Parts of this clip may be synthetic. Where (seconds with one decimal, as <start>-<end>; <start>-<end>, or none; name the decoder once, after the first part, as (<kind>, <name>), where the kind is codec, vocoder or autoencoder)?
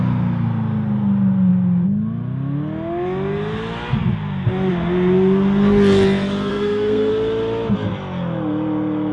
6.5-7.1 (codec, SNAC)